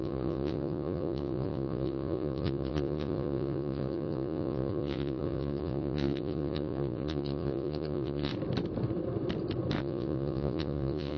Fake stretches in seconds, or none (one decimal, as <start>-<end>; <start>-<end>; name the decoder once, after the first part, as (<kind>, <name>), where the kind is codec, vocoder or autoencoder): 0.0-8.3 (vocoder, Vocos); 9.8-11.2